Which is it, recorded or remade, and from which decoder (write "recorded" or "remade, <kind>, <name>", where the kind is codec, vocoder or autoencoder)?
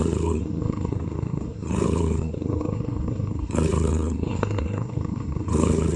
remade, codec, SNAC